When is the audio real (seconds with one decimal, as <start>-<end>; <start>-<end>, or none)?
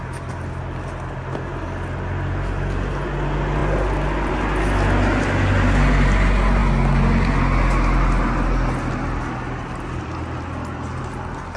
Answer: 0.0-11.6